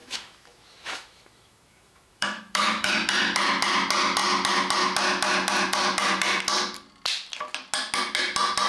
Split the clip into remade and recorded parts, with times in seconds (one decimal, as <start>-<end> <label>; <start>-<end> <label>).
0.0-2.9 remade; 2.9-8.7 recorded